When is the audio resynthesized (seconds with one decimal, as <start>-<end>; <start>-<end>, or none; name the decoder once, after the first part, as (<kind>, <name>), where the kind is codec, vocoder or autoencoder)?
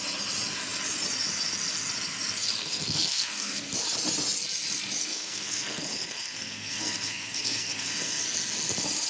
2.6-3.7 (codec, SNAC); 5.0-8.2